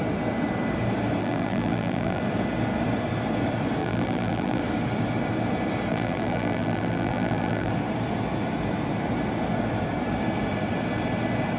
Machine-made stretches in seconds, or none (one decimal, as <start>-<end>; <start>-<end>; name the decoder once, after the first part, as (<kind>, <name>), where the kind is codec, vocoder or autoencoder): 1.2-2.2 (vocoder, BigVGAN v2); 3.8-4.6; 5.9-7.7